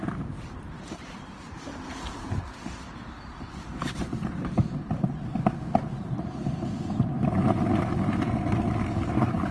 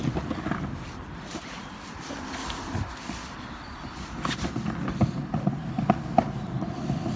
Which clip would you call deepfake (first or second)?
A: first